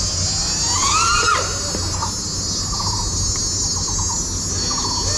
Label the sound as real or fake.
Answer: real